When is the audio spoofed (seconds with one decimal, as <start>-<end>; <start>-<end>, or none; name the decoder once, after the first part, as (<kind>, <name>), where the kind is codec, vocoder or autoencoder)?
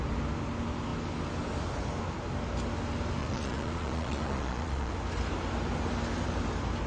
3.2-4.9 (vocoder, Vocos)